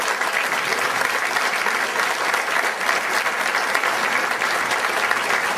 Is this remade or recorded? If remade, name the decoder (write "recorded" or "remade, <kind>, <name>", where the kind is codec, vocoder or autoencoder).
recorded